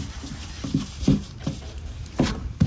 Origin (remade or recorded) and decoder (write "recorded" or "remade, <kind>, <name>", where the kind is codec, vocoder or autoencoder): recorded